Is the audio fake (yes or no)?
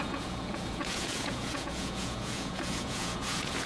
yes